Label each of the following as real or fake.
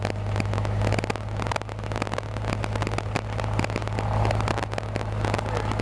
real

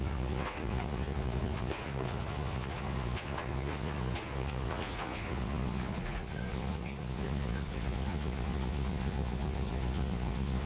fake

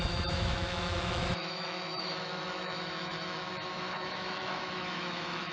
fake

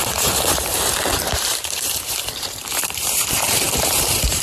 fake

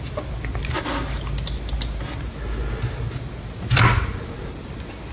real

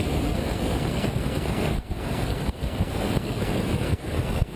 fake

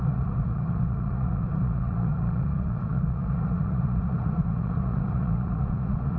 fake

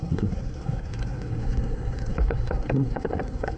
fake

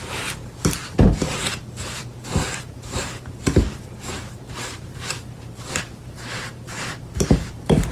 fake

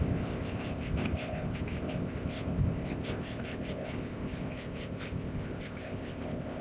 fake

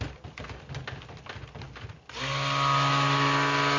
real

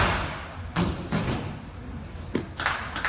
real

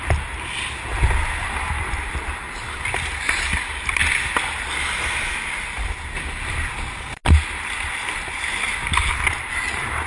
real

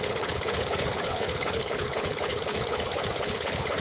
fake